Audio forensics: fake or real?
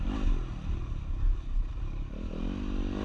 real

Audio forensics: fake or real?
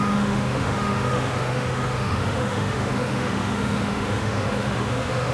fake